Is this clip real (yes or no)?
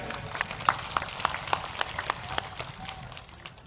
yes